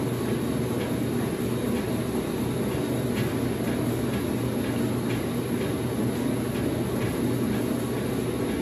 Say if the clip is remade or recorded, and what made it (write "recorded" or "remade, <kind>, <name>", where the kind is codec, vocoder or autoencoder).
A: recorded